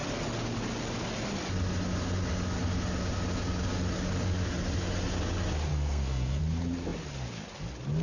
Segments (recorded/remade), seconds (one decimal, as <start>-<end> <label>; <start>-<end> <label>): 0.0-5.7 recorded; 5.7-6.4 remade; 6.4-8.0 recorded